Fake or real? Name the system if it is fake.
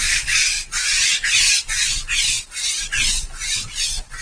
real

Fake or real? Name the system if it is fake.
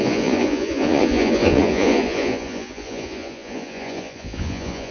fake, vocoder, Vocos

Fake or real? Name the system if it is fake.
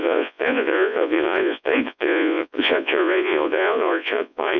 fake, vocoder, Vocos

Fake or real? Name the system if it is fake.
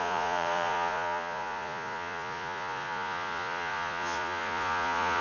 fake, vocoder, Vocos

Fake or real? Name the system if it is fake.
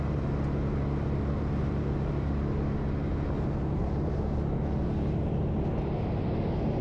real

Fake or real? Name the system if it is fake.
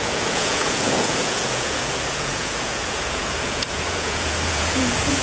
fake, vocoder, Vocos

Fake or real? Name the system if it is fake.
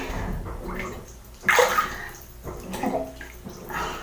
real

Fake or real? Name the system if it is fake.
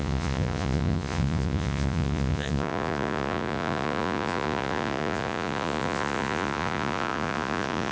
fake, vocoder, Vocos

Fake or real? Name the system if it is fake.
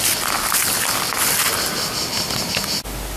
real